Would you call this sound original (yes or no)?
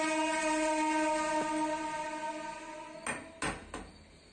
yes